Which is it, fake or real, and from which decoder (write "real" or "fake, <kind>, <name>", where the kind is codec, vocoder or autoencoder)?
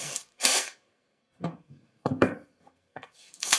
fake, codec, SNAC